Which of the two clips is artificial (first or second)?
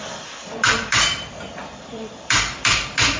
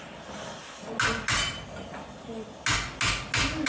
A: first